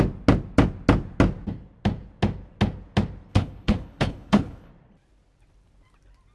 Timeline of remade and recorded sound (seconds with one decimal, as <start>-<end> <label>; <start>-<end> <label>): 0.0-3.3 recorded; 3.3-4.7 remade; 4.7-6.3 recorded